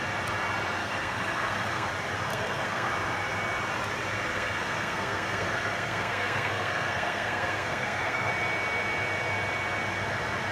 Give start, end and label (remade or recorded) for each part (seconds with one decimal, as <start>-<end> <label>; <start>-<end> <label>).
0.0-0.8 recorded; 0.8-1.9 remade; 1.9-2.3 recorded; 2.3-2.9 remade; 2.9-4.3 recorded; 4.3-8.3 remade; 8.3-10.5 recorded